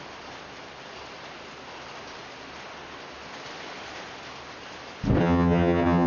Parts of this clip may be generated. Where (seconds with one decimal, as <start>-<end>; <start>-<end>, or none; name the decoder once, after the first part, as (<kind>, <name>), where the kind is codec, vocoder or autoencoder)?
5.2-6.1 (vocoder, HiFi-GAN)